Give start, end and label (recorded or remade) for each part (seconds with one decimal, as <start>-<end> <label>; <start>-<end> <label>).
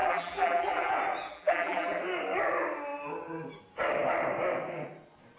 0.0-0.9 remade; 0.9-1.3 recorded; 1.3-2.0 remade; 2.0-5.4 recorded